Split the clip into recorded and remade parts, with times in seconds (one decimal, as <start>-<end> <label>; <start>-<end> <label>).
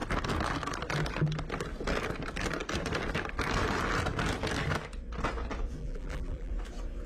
0.0-5.8 recorded; 5.8-6.5 remade; 6.5-7.1 recorded